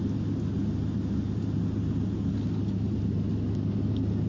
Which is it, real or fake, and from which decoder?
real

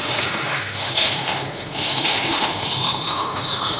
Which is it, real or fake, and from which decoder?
fake, autoencoder, DAC-VAE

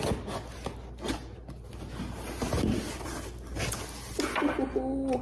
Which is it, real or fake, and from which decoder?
real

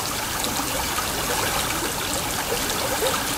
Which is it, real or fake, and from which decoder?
real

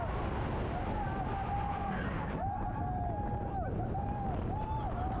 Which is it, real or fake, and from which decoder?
real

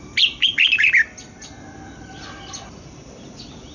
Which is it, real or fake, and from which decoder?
real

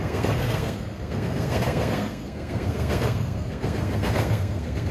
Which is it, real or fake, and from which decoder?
fake, codec, SNAC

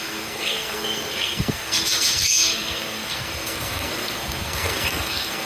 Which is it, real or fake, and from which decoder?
fake, codec, SNAC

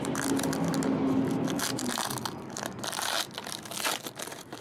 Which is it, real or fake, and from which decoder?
real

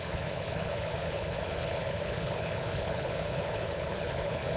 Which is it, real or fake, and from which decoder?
fake, codec, HILCodec